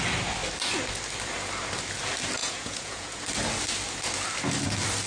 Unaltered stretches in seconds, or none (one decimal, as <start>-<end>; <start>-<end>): 0.0-2.4; 3.2-5.1